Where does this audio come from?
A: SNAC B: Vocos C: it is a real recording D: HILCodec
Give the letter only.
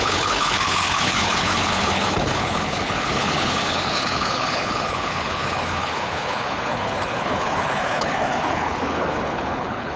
D